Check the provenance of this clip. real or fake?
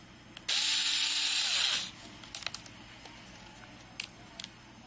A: real